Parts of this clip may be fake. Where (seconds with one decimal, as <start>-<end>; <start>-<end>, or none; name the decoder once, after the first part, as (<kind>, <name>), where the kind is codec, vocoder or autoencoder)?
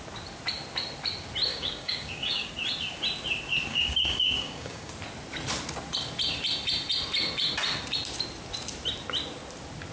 1.5-2.5 (codec, DAC); 3.7-4.9